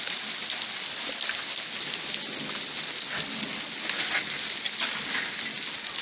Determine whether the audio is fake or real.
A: real